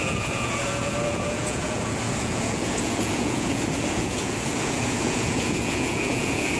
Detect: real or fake fake